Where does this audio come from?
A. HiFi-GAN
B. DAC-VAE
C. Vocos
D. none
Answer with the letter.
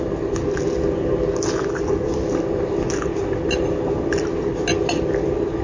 D